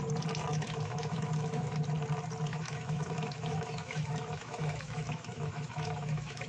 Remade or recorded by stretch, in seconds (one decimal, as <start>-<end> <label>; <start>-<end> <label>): 0.0-0.5 recorded; 0.5-1.8 remade; 1.8-2.5 recorded; 2.5-6.5 remade